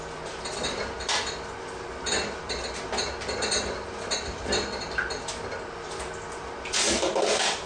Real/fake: real